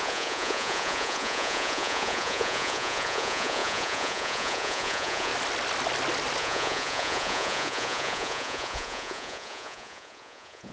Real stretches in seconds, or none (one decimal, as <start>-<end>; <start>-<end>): 5.3-6.4